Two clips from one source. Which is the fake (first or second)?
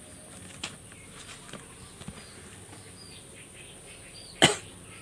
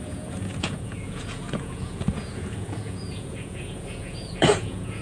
second